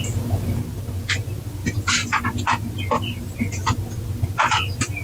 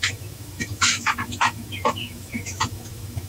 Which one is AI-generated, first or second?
second